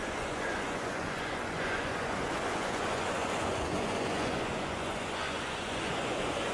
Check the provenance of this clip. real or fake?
fake